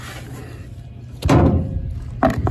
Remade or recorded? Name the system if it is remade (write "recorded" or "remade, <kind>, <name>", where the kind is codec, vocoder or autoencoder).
recorded